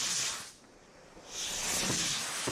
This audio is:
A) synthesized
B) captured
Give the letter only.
B